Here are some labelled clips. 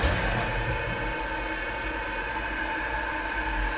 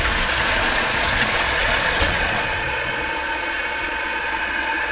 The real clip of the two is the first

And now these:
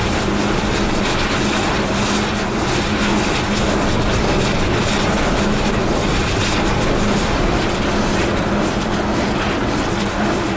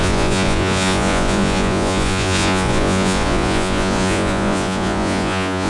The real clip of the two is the first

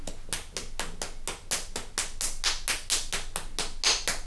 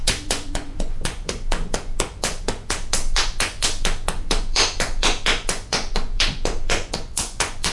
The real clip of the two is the first